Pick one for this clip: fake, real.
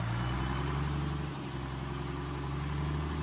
real